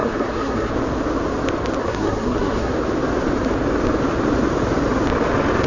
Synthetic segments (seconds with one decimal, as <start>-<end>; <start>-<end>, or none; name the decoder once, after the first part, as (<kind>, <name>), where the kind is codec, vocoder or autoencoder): 0.0-0.7 (codec, SNAC); 1.8-2.7